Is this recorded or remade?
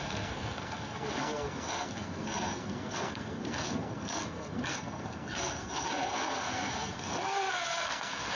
remade